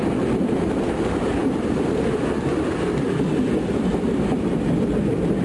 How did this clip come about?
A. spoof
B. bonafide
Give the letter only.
B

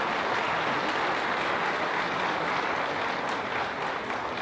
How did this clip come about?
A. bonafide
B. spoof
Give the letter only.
A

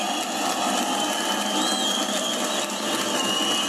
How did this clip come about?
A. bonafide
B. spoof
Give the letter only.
A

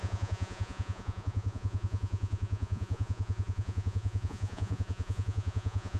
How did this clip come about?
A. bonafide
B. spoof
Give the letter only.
B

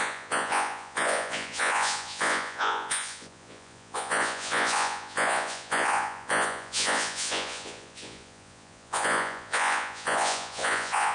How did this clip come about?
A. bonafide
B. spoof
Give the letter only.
B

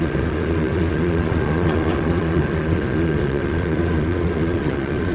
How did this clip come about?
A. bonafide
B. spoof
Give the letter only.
B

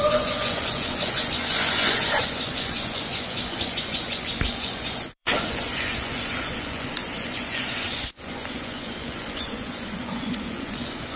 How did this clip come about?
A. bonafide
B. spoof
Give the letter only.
B